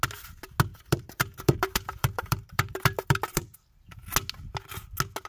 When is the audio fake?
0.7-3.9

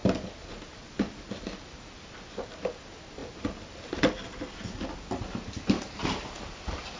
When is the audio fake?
none

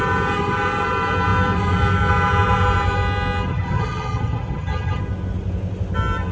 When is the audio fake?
3.5-5.0

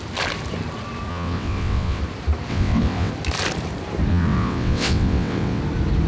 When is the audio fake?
1.1-2.0; 2.5-3.1; 4.1-5.6